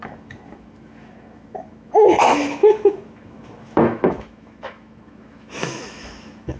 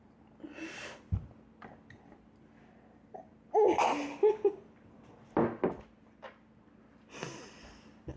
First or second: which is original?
second